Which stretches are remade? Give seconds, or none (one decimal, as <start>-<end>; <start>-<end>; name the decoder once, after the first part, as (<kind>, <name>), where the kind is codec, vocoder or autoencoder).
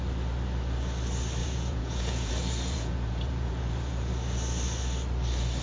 1.4-4.1 (vocoder, Vocos)